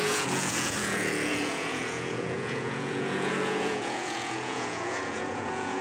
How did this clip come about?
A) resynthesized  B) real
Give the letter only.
A